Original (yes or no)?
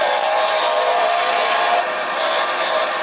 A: no